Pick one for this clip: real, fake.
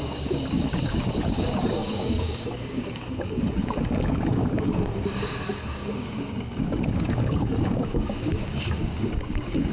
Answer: fake